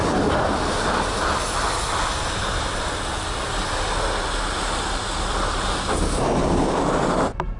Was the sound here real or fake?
real